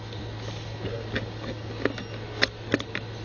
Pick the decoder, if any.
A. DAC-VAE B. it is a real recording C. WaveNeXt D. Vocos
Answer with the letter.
B